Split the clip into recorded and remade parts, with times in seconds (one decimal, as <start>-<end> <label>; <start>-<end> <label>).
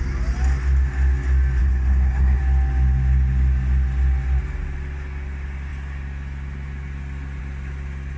0.0-1.6 recorded; 1.6-2.4 remade; 2.4-8.2 recorded